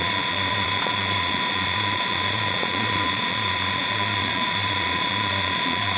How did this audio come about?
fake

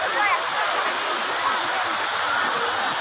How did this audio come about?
real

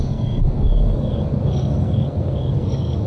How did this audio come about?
fake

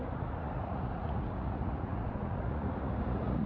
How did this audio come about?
fake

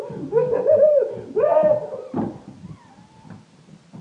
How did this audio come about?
real